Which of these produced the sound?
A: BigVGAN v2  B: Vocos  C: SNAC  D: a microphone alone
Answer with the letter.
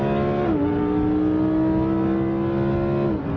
D